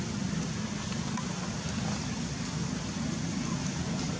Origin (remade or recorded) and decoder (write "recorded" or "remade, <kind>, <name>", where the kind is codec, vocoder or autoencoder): recorded